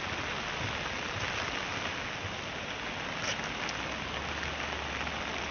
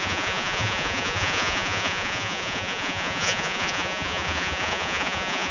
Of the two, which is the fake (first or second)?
second